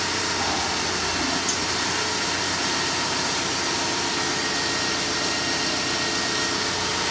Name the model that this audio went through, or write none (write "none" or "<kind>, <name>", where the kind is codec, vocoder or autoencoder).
none